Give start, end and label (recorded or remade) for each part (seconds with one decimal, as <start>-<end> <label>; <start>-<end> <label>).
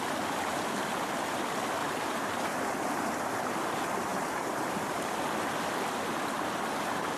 0.0-1.8 recorded; 1.8-2.8 remade; 2.8-4.1 recorded; 4.1-5.1 remade; 5.1-7.2 recorded